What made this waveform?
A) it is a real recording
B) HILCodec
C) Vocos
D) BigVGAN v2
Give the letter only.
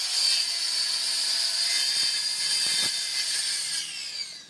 A